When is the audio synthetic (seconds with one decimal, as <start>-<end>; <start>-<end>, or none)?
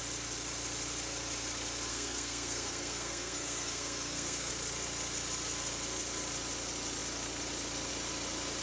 1.9-4.5